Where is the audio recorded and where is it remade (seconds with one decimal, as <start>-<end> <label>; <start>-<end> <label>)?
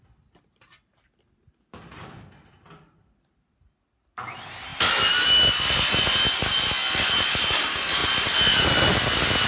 0.0-9.5 recorded